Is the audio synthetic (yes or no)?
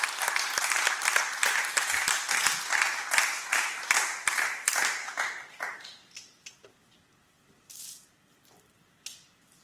no